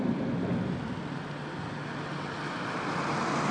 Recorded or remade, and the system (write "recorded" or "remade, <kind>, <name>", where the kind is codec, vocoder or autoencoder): recorded